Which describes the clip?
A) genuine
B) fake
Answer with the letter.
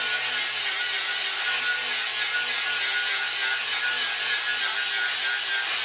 A